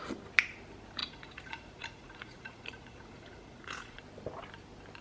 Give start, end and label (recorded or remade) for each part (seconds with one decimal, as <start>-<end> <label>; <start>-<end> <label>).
0.0-1.0 recorded; 1.0-4.0 remade; 4.0-5.0 recorded